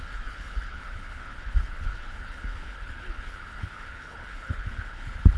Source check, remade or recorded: remade